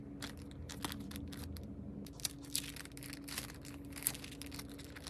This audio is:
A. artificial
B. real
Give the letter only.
B